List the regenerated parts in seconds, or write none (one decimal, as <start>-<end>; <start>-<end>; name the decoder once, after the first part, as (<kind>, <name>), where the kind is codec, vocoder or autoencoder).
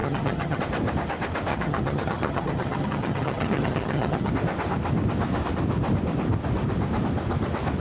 0.0-0.6 (vocoder, HiFi-GAN); 1.5-4.3